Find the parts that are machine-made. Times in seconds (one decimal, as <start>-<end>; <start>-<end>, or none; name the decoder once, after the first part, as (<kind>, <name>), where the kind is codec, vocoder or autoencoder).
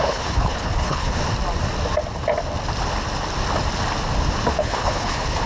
0.0-1.2 (codec, HILCodec); 4.5-5.5